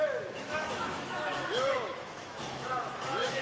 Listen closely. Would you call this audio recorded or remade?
remade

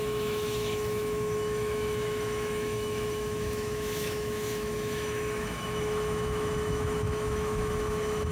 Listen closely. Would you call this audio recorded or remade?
remade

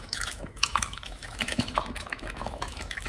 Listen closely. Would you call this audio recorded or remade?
remade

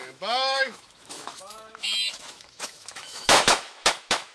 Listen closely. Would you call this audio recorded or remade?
remade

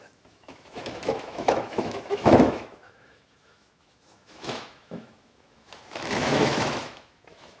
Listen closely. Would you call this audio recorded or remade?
remade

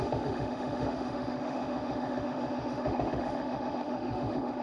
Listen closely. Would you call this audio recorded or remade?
remade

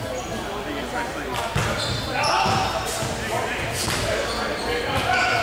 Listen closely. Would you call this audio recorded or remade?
recorded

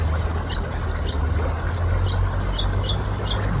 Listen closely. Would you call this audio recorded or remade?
recorded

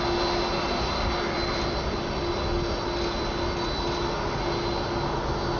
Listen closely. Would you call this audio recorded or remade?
recorded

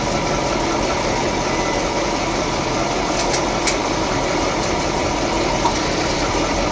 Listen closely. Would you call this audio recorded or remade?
recorded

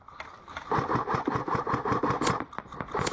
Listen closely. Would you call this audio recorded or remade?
recorded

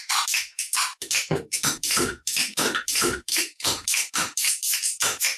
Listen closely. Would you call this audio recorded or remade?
remade